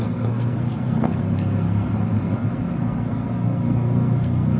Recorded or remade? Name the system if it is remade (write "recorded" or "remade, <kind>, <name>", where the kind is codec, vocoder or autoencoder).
remade, codec, SNAC